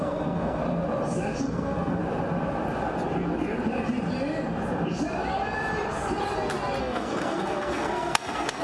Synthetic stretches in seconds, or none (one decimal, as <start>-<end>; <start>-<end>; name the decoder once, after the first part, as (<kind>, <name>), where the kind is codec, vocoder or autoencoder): 0.0-0.6 (codec, SNAC); 1.4-2.0; 6.8-8.6